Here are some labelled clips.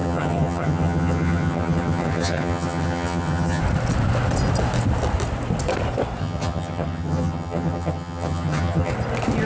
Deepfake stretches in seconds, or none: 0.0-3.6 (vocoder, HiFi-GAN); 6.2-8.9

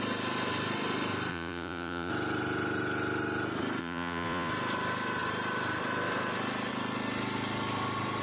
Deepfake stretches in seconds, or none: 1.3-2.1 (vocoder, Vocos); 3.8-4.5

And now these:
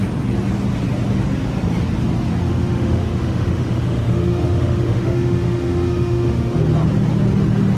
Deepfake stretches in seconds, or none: 2.4-6.6 (autoencoder, DAC-VAE)

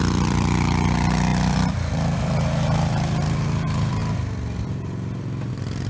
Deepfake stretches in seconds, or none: 0.0-4.0 (vocoder, BigVGAN v2); 5.5-5.9